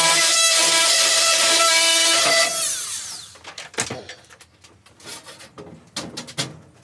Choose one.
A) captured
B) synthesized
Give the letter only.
A